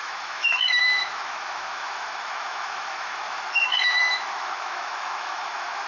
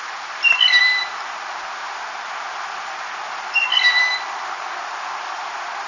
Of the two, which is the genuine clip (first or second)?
second